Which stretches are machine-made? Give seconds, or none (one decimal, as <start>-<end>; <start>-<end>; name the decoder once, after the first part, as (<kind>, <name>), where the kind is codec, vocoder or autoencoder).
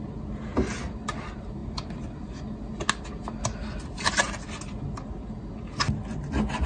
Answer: none